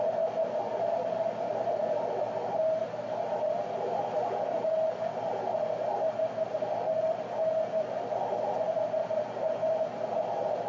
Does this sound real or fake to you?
real